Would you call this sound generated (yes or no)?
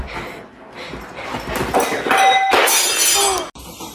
no